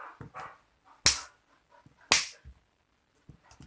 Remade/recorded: recorded